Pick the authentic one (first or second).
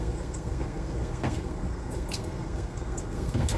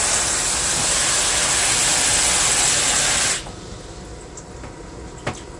second